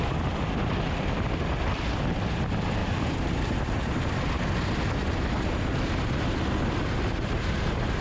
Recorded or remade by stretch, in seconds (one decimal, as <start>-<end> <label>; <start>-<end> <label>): 0.0-8.0 recorded